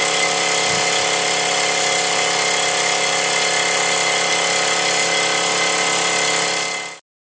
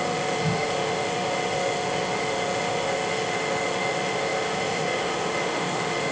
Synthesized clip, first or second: second